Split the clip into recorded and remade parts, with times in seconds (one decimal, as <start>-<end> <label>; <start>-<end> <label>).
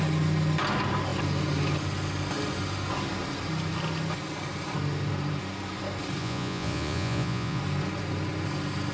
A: 0.0-6.2 recorded; 6.2-7.6 remade; 7.6-8.9 recorded